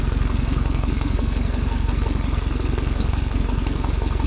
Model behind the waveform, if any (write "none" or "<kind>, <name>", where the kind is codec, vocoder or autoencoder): codec, SNAC